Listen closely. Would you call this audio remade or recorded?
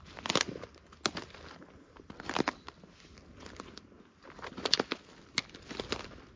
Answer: recorded